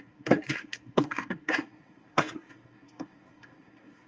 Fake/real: fake